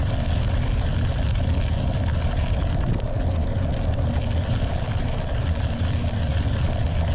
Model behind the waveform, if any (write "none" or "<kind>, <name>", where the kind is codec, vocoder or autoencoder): none